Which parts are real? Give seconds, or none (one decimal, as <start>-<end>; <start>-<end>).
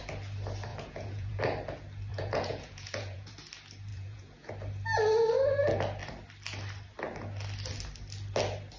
0.0-0.7; 1.4-2.1; 3.3-3.9; 4.5-8.8